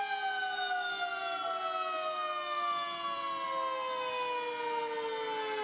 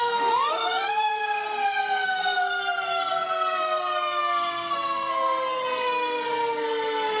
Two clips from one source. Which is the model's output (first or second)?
second